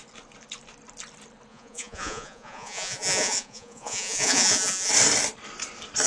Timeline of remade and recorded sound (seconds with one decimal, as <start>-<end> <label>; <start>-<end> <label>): 0.0-1.5 recorded; 1.5-4.9 remade; 4.9-6.1 recorded